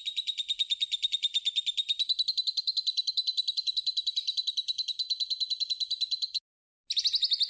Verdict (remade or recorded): recorded